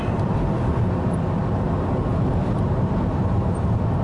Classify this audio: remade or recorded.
recorded